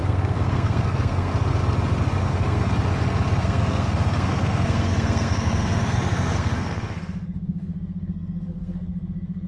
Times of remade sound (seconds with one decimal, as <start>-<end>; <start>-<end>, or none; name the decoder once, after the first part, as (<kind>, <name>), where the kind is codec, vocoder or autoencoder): 0.0-1.3 (codec, SNAC); 2.2-2.7; 3.4-9.5